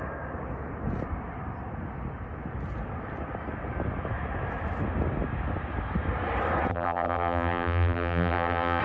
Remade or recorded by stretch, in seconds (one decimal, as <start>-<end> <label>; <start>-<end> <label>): 0.0-6.7 recorded; 6.7-8.8 remade